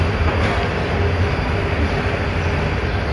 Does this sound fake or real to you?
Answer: real